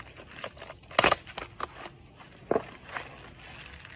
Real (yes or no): yes